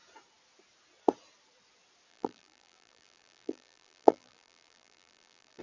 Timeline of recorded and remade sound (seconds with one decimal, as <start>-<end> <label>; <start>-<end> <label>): 0.0-2.1 recorded; 2.1-5.6 remade